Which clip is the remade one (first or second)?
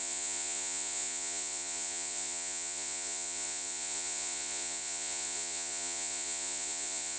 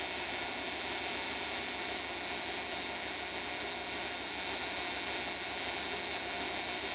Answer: first